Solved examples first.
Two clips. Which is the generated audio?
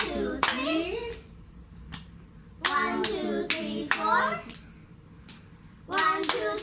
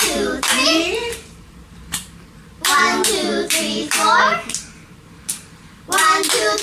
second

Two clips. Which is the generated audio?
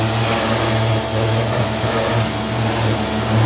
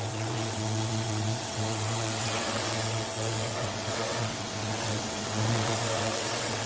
second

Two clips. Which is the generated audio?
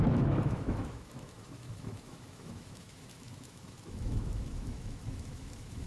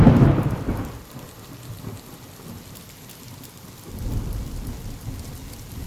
first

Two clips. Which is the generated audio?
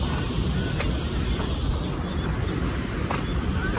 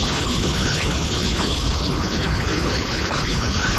second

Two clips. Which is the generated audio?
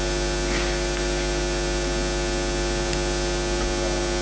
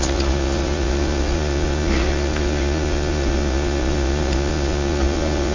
second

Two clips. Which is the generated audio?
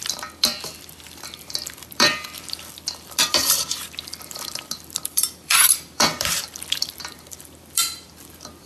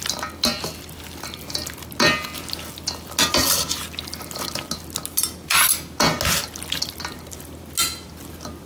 first